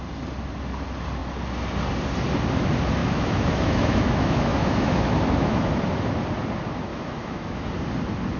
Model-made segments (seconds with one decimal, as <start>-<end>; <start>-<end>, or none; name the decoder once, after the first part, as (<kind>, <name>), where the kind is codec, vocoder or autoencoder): 3.0-5.7 (autoencoder, DAC-VAE); 6.9-7.7